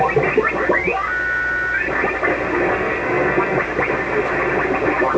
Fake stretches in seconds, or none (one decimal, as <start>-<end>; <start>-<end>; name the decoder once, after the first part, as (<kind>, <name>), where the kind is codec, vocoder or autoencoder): 2.7-3.6 (codec, SNAC)